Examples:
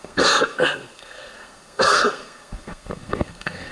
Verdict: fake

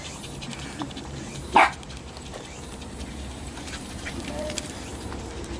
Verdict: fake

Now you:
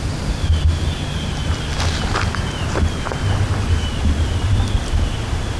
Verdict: real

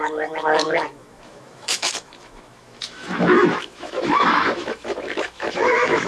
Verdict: fake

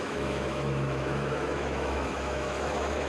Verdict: fake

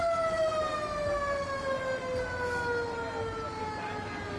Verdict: real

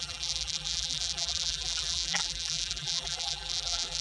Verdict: fake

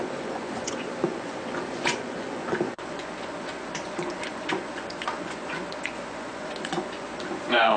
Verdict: fake